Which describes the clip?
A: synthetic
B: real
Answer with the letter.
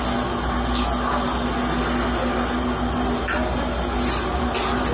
B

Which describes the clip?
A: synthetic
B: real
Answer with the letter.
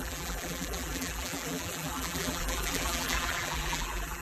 A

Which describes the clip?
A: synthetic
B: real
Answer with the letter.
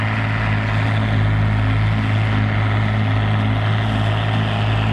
B